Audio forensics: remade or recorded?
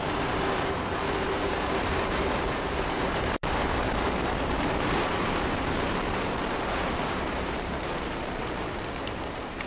remade